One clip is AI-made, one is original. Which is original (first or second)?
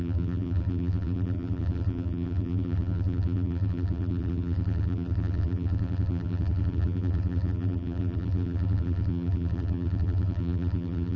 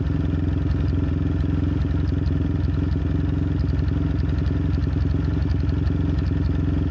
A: second